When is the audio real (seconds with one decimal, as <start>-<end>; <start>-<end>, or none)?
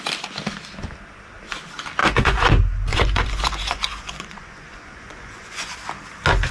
0.0-2.0; 2.5-2.9; 5.7-6.5